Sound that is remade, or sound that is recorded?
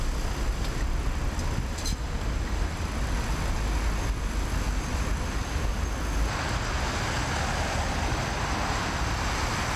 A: recorded